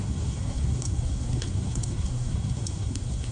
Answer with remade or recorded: remade